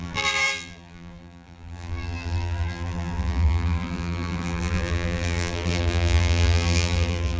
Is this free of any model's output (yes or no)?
no